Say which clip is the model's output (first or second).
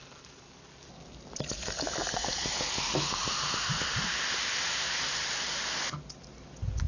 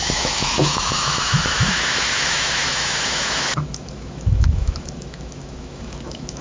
second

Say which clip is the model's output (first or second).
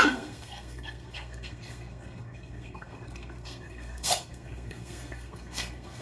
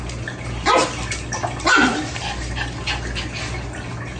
first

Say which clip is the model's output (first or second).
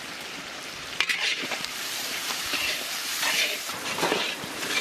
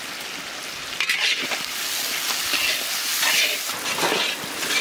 first